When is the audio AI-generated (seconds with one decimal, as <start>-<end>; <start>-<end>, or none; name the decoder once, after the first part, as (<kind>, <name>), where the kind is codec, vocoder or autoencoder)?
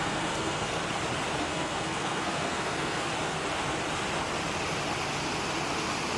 0.0-0.8 (codec, SNAC); 1.4-3.1